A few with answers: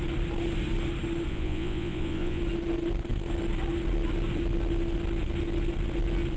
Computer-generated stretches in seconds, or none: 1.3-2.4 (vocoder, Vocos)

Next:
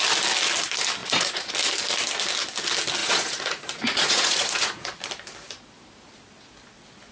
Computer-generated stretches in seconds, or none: 1.0-1.5 (vocoder, Vocos); 3.0-5.0

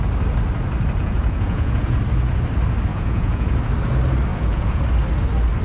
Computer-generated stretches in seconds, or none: 1.0-2.0 (vocoder, Vocos); 2.9-3.6; 4.3-4.8

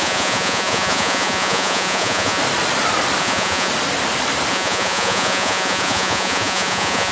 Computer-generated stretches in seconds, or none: 0.0-2.4 (vocoder, Vocos); 3.2-3.7; 4.5-7.1

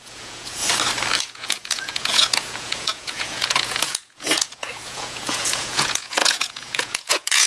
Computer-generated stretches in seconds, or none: 0.0-0.6 (vocoder, Vocos); 1.2-7.5

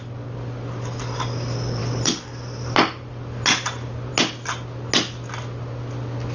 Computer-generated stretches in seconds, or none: none

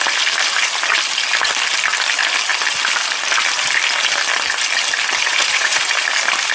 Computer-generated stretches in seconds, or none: 5.3-5.8 (vocoder, Vocos)

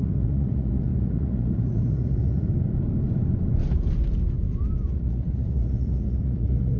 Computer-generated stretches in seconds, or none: 0.0-2.5 (vocoder, Vocos); 4.9-6.8